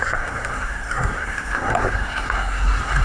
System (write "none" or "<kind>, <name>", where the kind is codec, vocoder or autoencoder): codec, SNAC